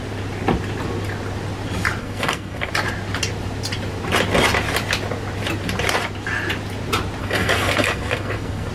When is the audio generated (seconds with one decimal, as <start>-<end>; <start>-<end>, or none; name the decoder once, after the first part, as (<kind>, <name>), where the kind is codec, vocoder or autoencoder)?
2.0-2.7 (codec, SNAC); 7.2-8.7